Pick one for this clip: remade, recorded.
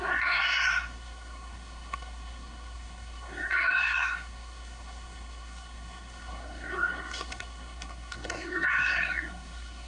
remade